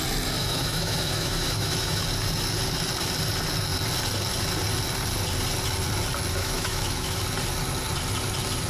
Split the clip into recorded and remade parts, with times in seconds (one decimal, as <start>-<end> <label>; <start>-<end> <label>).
0.0-0.4 recorded; 0.4-2.0 remade; 2.0-6.4 recorded; 6.4-7.2 remade; 7.2-8.7 recorded